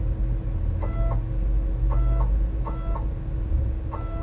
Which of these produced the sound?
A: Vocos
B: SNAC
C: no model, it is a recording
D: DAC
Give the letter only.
C